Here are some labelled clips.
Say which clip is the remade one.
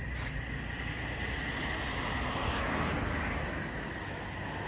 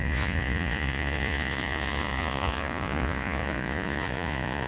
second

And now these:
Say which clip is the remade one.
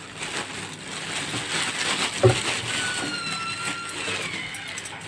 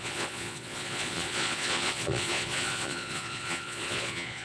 second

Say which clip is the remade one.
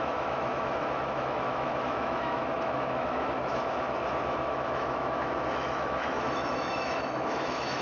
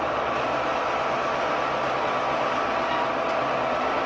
first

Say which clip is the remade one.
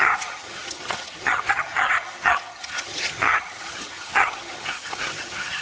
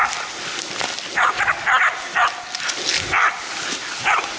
first